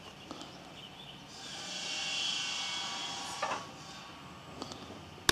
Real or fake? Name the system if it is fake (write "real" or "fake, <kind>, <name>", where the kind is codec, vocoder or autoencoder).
real